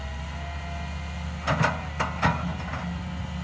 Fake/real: real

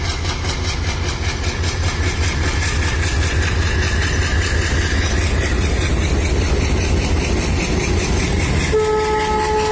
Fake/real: real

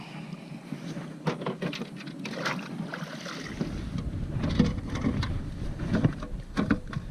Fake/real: real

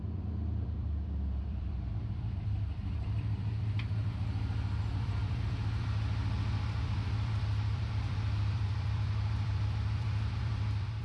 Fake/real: fake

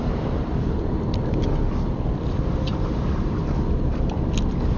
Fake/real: fake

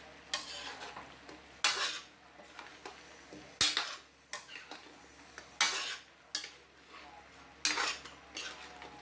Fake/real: real